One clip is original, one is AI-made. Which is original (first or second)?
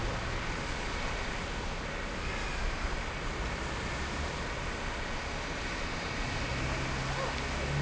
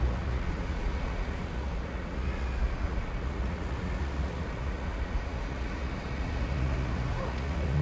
first